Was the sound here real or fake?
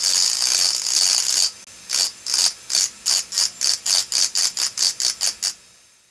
real